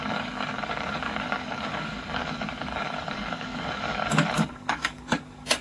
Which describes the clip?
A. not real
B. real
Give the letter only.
A